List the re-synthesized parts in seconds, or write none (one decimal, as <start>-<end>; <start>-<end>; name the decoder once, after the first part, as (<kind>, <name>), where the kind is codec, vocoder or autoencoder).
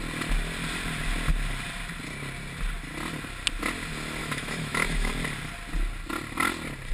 4.2-5.1 (autoencoder, DAC-VAE)